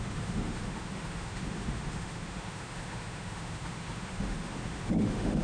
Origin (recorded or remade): remade